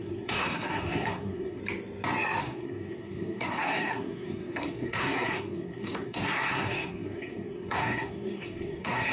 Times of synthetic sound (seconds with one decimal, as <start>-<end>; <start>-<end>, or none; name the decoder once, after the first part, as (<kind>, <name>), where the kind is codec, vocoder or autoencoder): 0.0-1.6 (codec, SNAC); 2.4-9.1